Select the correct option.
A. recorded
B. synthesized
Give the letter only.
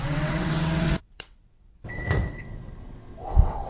B